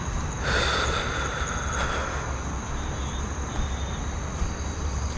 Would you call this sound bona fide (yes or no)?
yes